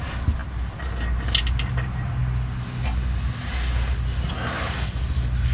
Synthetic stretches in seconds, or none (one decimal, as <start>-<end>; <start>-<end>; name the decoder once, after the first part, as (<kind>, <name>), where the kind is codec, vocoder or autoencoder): none